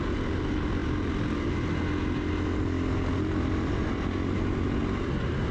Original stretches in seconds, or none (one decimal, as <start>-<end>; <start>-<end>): 0.0-5.5